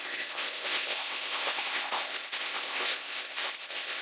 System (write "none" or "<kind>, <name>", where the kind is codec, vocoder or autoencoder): codec, ZipCodec